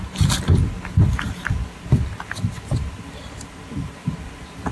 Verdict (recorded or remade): recorded